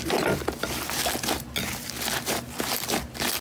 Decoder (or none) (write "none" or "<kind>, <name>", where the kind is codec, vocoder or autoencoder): none